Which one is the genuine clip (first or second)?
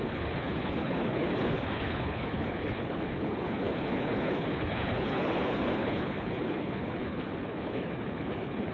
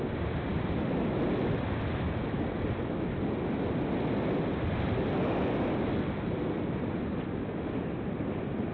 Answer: second